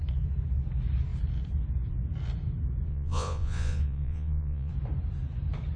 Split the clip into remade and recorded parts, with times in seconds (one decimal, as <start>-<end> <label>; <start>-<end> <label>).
0.0-2.9 recorded; 2.9-4.7 remade; 4.7-5.8 recorded